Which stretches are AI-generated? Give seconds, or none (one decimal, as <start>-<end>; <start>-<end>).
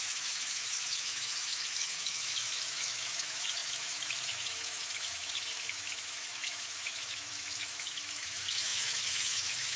0.0-9.8